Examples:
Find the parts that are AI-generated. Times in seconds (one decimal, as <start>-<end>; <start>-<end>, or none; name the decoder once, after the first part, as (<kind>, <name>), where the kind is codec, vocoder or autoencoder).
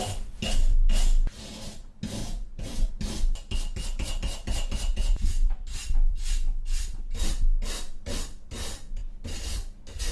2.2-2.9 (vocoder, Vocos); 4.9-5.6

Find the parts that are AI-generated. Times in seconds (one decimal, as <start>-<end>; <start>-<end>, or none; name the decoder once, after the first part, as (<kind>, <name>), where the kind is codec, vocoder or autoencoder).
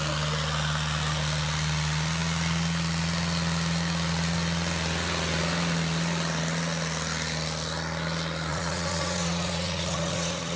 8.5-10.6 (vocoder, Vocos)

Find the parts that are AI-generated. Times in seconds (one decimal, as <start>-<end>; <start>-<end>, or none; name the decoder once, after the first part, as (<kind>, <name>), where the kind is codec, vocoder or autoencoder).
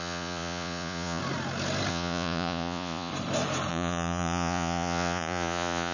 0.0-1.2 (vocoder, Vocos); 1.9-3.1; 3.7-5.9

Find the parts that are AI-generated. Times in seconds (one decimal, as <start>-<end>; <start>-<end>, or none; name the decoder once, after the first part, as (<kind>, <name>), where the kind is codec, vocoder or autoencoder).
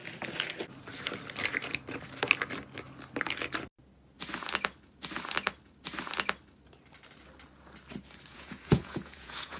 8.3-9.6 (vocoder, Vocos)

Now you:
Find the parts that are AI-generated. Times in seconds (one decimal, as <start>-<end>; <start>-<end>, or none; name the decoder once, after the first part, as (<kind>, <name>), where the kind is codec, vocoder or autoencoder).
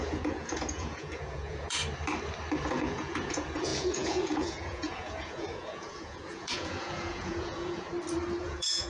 0.0-1.8 (vocoder, Vocos); 2.7-7.9; 8.4-8.9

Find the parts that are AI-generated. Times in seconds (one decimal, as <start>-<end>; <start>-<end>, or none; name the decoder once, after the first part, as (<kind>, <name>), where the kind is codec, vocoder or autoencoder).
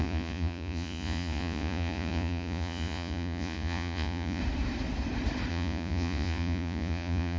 0.0-4.4 (vocoder, Vocos); 5.5-7.4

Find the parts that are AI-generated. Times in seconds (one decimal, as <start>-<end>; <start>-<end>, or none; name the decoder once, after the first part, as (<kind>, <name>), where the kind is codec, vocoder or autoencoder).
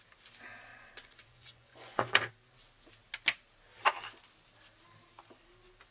0.7-2.3 (vocoder, Vocos)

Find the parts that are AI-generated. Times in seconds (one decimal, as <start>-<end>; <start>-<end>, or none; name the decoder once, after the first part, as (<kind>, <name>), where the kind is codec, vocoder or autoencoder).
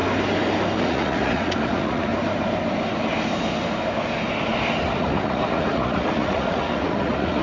0.8-2.1 (vocoder, Vocos); 4.8-7.4